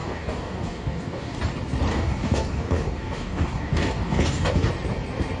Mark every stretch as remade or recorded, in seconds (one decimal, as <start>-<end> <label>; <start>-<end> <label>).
0.0-1.4 remade; 1.4-1.9 recorded; 1.9-4.7 remade; 4.7-5.4 recorded